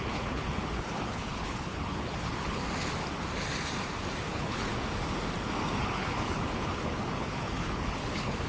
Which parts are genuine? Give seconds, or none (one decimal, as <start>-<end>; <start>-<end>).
2.6-4.3; 4.7-5.8